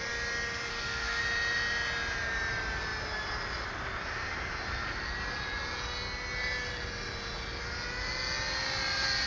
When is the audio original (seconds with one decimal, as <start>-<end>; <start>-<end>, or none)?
0.0-0.7; 1.2-9.3